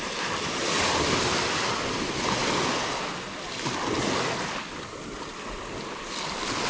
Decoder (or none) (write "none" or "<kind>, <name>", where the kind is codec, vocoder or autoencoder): none